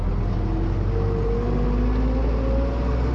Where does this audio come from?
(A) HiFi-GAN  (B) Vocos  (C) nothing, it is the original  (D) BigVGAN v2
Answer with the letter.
C